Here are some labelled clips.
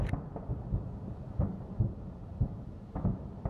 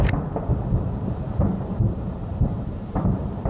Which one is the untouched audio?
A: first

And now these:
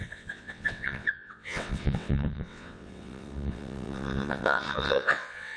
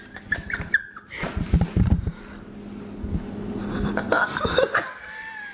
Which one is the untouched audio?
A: second